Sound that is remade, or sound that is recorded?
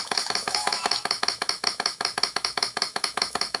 remade